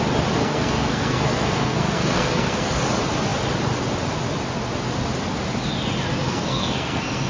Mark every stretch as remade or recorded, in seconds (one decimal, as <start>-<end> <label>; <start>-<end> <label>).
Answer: 0.0-0.4 recorded; 0.4-2.8 remade; 2.8-6.2 recorded; 6.2-7.3 remade